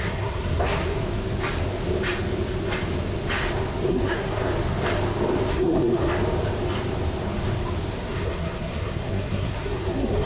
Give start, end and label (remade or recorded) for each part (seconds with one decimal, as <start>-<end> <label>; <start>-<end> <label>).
0.0-1.0 remade; 1.0-3.9 recorded; 3.9-4.4 remade; 4.4-5.5 recorded; 5.5-6.1 remade; 6.1-7.9 recorded; 7.9-10.3 remade